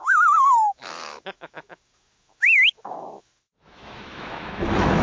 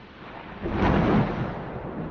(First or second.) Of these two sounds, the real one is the second